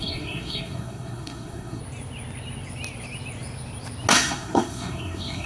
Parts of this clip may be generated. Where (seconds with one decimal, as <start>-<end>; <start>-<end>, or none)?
0.0-1.8; 4.1-5.5